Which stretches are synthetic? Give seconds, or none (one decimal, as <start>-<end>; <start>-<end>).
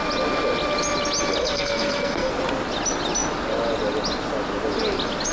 1.4-2.3